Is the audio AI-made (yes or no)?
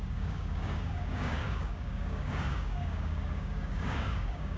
yes